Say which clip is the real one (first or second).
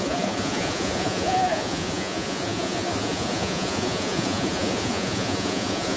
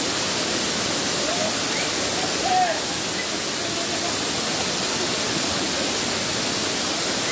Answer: second